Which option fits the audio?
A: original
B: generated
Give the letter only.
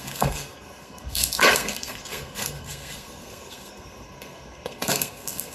B